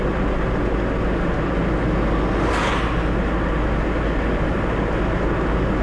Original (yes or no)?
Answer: yes